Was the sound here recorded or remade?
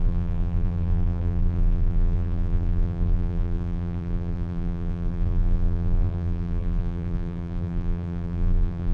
remade